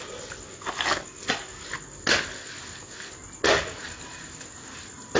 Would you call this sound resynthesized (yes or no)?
no